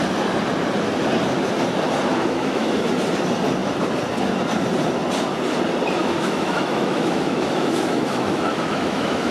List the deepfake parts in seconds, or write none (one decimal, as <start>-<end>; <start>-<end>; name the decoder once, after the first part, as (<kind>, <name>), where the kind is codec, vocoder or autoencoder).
2.1-2.8 (autoencoder, DAC-VAE); 6.0-9.3